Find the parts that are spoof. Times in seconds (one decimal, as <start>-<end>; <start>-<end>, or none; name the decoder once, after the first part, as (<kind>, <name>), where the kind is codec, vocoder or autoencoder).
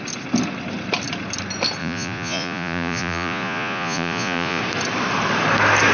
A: 1.8-4.6 (vocoder, Vocos)